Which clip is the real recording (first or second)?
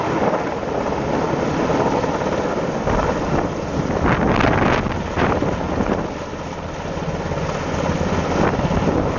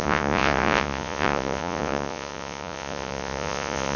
first